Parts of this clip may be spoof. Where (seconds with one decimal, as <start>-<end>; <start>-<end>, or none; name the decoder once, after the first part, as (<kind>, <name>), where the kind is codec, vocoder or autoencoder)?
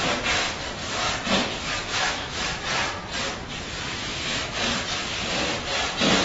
1.9-2.6 (autoencoder, DAC-VAE); 4.0-4.7